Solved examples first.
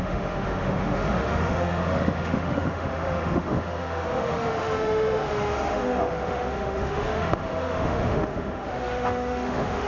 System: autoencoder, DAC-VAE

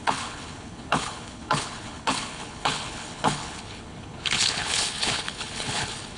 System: codec, HILCodec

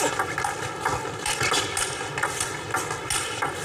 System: none